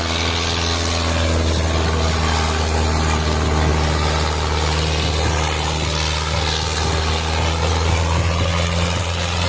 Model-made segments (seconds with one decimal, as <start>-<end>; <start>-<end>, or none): none